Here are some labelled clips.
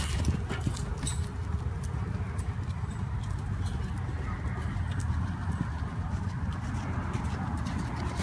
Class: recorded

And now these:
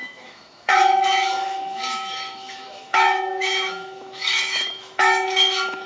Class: remade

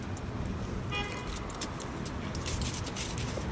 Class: recorded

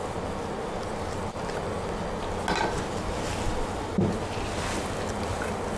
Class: recorded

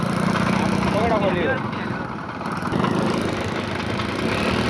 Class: recorded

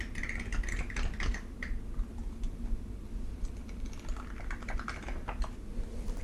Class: recorded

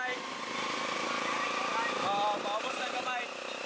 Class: recorded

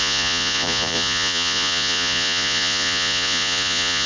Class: remade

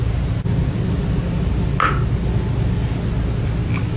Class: recorded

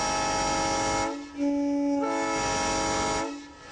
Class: recorded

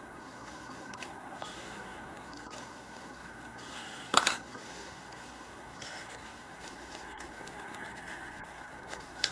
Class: remade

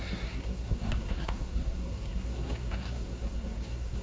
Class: remade